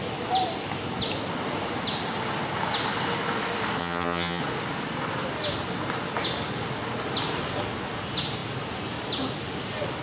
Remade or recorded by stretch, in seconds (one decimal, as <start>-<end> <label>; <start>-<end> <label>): 0.0-3.8 recorded; 3.8-4.4 remade; 4.4-10.0 recorded